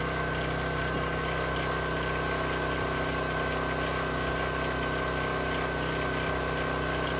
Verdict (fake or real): real